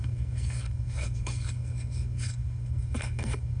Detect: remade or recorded remade